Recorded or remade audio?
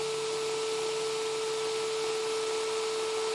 recorded